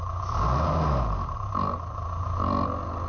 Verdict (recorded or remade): recorded